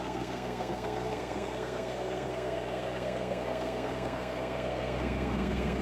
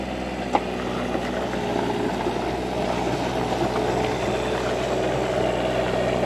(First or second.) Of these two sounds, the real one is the second